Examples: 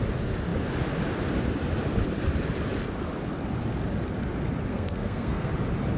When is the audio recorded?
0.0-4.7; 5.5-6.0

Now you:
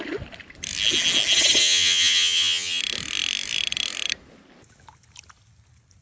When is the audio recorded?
0.0-1.6; 2.8-6.0

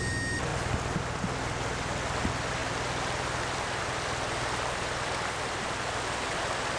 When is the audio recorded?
0.0-6.8

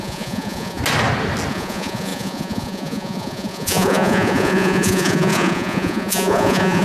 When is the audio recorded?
0.8-1.5

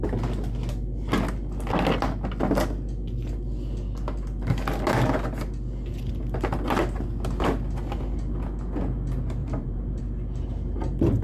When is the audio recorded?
0.0-9.4; 10.0-11.2

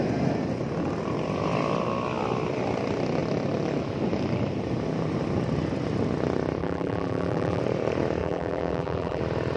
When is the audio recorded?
0.0-6.6; 7.6-8.2; 9.2-9.6

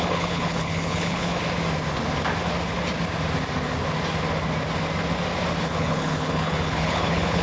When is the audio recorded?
1.4-5.6